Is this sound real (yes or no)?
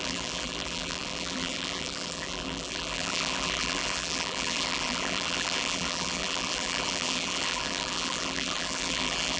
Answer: no